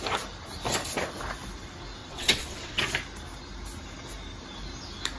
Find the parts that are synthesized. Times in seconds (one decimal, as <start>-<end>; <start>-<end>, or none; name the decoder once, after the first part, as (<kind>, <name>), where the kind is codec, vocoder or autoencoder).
2.0-2.8 (vocoder, WaveNeXt)